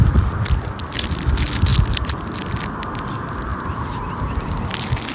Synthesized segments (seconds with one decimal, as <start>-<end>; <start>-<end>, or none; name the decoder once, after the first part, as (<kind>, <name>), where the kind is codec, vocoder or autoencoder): none

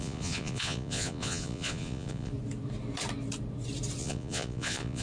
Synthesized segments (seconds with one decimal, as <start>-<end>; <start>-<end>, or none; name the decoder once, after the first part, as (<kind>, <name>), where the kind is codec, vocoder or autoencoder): 0.0-2.3 (vocoder, Vocos); 4.0-5.0